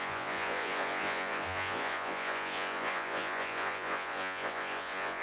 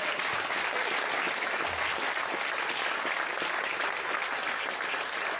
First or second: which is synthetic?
first